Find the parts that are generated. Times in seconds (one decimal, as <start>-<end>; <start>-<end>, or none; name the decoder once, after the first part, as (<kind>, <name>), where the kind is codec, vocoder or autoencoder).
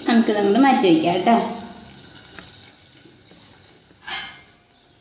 none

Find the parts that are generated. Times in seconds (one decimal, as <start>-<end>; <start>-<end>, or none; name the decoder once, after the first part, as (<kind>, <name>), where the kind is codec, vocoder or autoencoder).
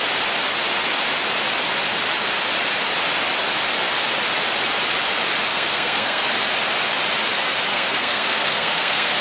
5.5-6.3 (codec, SNAC); 7.7-9.2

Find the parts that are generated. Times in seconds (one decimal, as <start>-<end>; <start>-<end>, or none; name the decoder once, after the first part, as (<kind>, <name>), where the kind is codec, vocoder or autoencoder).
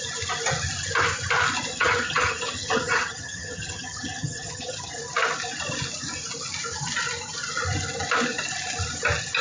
1.7-4.9 (vocoder, HiFi-GAN)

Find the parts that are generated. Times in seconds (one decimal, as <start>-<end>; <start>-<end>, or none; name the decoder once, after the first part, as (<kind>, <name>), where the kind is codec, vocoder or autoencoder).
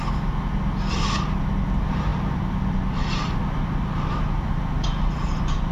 none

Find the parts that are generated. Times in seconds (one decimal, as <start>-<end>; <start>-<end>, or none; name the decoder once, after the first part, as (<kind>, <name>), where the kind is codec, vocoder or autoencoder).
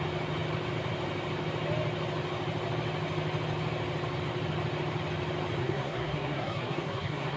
5.6-7.4 (codec, SNAC)